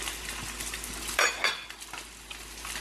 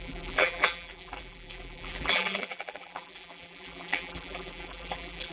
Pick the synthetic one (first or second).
second